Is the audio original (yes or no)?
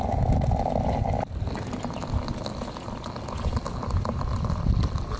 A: yes